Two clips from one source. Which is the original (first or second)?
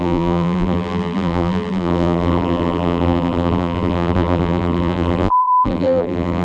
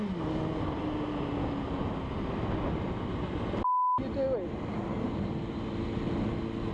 second